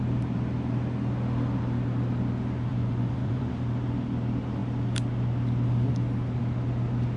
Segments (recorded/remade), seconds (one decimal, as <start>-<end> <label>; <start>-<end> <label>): 0.0-2.7 recorded; 2.7-3.5 remade; 3.5-7.2 recorded